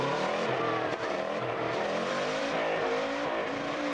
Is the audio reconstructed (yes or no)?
yes